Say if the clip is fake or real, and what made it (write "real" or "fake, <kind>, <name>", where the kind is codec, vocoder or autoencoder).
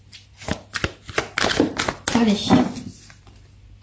real